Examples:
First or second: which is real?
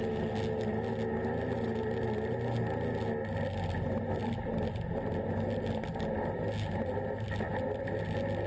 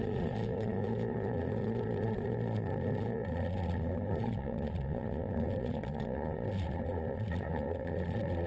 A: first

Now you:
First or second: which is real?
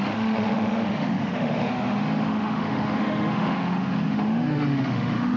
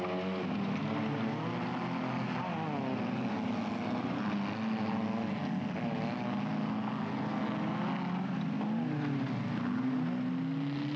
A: second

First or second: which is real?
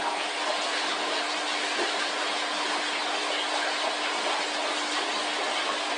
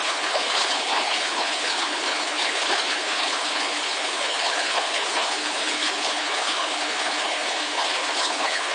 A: first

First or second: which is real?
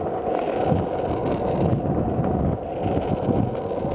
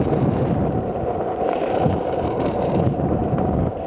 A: first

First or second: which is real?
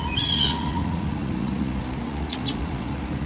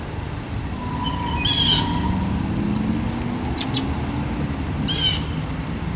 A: second